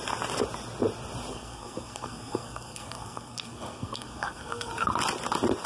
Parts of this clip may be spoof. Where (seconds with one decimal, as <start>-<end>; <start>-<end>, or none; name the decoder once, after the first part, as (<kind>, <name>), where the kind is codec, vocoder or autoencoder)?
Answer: 1.3-4.7 (codec, SNAC)